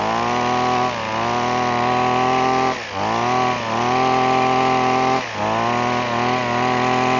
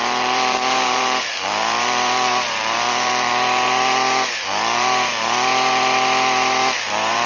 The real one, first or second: first